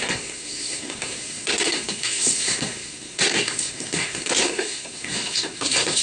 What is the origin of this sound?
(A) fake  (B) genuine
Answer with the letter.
A